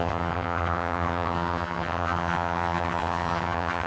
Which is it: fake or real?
fake